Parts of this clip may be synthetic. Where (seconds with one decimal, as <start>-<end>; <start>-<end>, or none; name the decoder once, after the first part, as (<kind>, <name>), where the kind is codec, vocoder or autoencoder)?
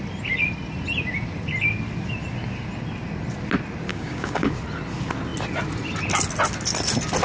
3.9-4.5 (codec, DAC)